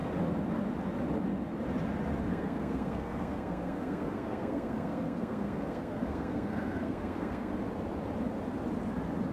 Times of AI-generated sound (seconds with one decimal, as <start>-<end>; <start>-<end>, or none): 2.3-7.5